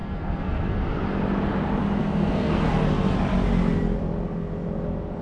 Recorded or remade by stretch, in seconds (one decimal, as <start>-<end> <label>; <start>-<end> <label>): 0.0-0.8 remade; 0.8-2.0 recorded; 2.0-2.7 remade; 2.7-5.2 recorded